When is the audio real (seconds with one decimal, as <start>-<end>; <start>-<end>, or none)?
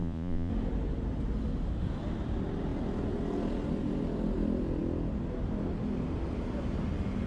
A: 0.5-7.3